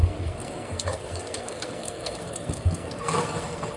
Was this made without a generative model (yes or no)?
no